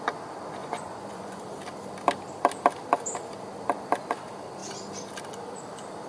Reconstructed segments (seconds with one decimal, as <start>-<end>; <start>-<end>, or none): 0.6-1.4